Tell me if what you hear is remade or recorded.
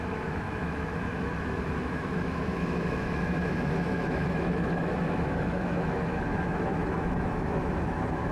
remade